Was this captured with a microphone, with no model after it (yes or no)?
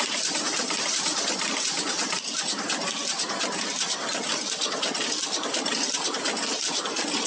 yes